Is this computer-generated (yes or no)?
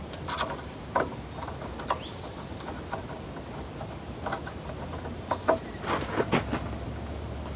no